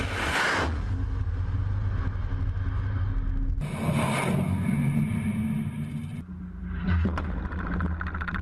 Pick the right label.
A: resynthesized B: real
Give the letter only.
B